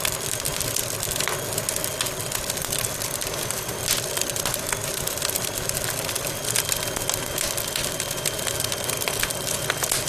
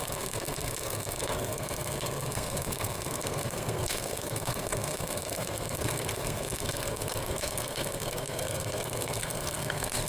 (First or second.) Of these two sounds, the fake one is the second